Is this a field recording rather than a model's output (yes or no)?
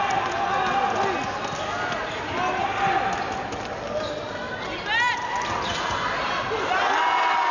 yes